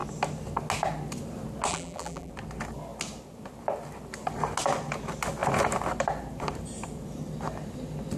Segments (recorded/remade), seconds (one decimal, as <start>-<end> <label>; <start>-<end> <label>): 0.0-1.7 recorded; 1.7-2.3 remade; 2.3-8.2 recorded